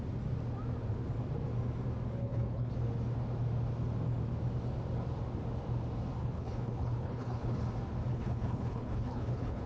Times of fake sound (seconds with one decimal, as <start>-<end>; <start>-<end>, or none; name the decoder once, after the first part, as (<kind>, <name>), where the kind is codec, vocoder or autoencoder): 2.2-2.7 (codec, HILCodec); 6.2-7.6; 8.1-9.7